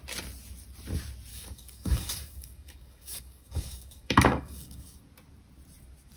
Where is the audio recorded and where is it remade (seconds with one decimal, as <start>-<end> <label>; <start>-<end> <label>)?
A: 0.0-1.3 recorded; 1.3-5.0 remade; 5.0-6.2 recorded